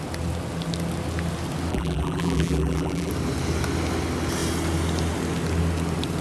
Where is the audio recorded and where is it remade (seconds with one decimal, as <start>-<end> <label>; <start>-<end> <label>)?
0.0-1.7 recorded; 1.7-3.1 remade; 3.1-6.2 recorded